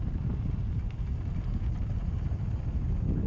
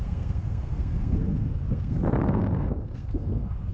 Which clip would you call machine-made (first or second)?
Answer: second